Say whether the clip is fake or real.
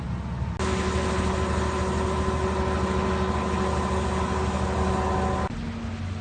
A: real